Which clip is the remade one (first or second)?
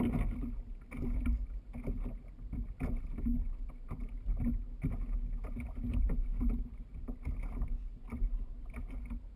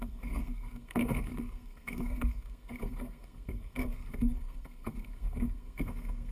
second